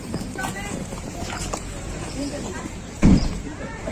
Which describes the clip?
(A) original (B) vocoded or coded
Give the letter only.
B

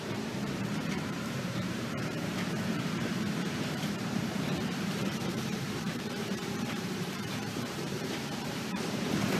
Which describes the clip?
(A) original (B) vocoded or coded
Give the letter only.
B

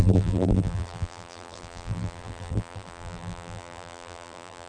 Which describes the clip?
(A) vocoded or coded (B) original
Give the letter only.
A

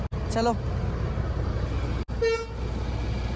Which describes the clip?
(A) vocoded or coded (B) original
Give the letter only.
B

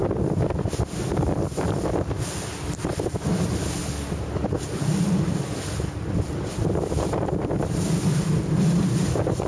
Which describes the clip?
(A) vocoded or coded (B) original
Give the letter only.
B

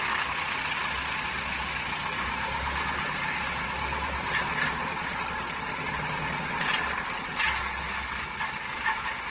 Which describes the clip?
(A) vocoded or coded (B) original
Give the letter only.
B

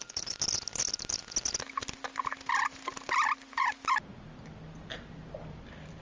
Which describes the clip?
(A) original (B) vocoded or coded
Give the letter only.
A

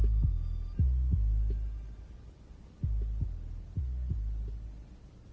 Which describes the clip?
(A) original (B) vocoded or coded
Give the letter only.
A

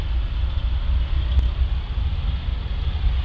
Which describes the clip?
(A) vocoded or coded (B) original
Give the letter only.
B